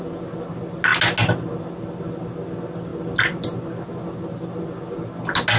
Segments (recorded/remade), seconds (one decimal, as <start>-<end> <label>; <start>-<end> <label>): 0.0-5.6 recorded